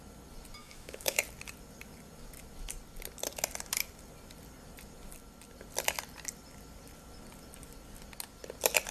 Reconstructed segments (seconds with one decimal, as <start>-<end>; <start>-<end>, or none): 0.6-1.2